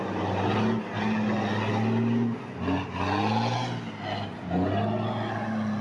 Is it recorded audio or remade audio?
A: recorded